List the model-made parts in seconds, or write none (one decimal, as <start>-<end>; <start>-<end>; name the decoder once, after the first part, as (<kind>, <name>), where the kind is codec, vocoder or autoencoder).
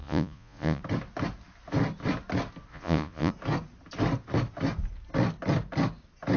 0.0-0.8 (vocoder, Vocos); 2.7-3.3